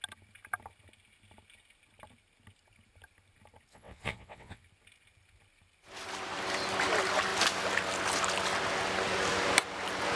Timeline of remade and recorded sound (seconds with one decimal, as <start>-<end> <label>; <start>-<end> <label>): 0.0-3.7 recorded; 3.7-4.6 remade; 4.6-10.2 recorded